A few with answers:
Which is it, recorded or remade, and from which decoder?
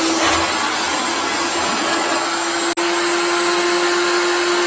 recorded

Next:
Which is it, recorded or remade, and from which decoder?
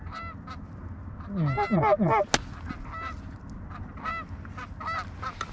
recorded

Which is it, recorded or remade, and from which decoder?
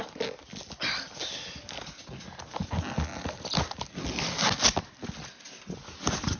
recorded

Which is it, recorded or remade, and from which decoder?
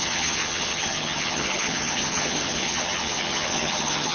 remade, vocoder, HiFi-GAN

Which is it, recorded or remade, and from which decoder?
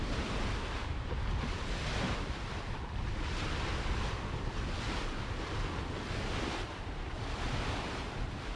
recorded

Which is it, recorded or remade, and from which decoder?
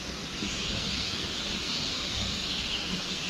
remade, codec, SNAC